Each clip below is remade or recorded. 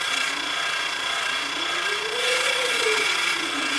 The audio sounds remade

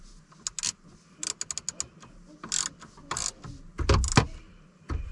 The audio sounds recorded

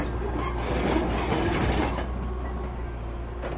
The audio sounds recorded